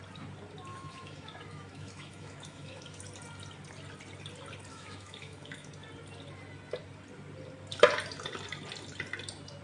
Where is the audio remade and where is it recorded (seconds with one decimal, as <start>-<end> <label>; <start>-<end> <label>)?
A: 0.0-0.7 recorded; 0.7-3.0 remade; 3.0-4.7 recorded; 4.7-5.7 remade; 5.7-9.6 recorded